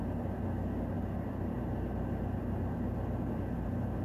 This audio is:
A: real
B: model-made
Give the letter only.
A